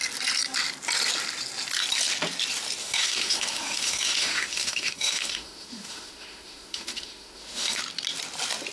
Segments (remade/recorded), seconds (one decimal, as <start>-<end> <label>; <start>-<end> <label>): 0.0-2.8 recorded; 2.8-7.8 remade; 7.8-8.7 recorded